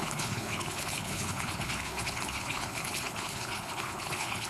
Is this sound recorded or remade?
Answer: remade